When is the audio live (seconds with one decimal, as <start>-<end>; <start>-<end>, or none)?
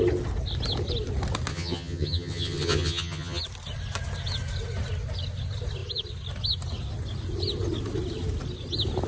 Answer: 0.0-1.5; 3.4-9.1